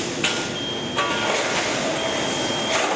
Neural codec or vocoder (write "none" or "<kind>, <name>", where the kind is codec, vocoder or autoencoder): none